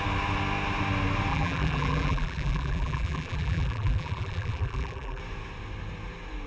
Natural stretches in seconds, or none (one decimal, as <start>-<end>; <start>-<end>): 0.0-1.3; 5.2-6.5